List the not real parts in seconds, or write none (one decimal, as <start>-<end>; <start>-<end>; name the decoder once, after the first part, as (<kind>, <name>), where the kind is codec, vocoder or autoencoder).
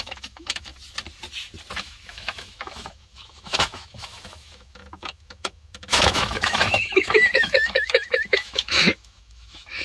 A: 0.0-0.7 (autoencoder, DAC-VAE); 1.8-9.8